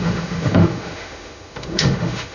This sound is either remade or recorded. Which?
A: remade